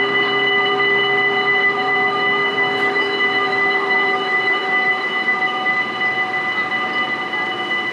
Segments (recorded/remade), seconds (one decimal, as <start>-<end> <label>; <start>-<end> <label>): 0.0-1.6 recorded; 1.6-5.7 remade; 5.7-7.9 recorded